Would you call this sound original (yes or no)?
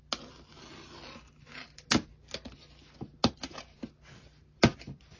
yes